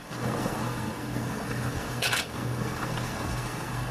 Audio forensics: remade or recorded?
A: remade